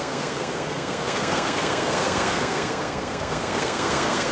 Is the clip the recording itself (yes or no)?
no